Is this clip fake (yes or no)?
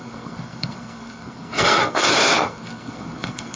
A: yes